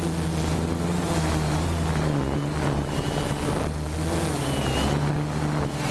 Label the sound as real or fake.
real